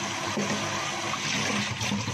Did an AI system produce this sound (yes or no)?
no